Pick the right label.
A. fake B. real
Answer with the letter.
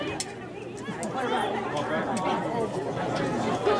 B